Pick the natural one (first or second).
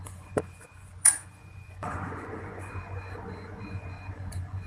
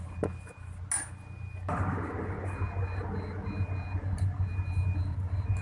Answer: second